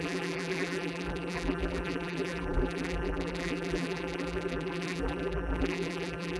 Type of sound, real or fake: fake